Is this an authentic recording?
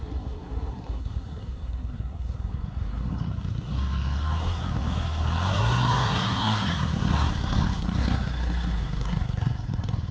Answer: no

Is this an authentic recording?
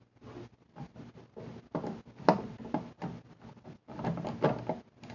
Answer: yes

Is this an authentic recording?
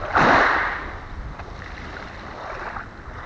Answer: yes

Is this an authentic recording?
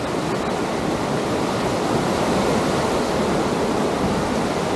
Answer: yes